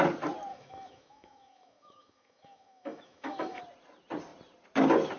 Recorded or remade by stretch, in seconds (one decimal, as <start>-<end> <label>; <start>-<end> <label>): 0.0-0.5 recorded; 0.5-3.6 remade; 3.6-5.2 recorded